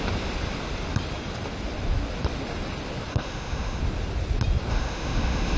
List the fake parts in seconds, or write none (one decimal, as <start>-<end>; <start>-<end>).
3.1-3.8; 4.7-5.6